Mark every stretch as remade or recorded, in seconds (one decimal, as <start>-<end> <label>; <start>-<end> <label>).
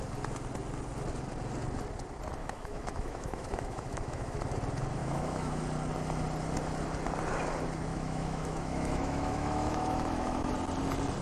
0.0-2.4 recorded; 2.4-4.4 remade; 4.4-5.0 recorded; 5.0-5.6 remade; 5.6-7.9 recorded; 7.9-10.5 remade; 10.5-11.2 recorded